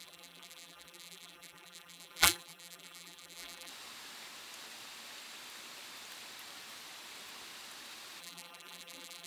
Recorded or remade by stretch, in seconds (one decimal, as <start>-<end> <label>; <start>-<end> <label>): 0.0-3.7 remade; 3.7-8.2 recorded; 8.2-9.3 remade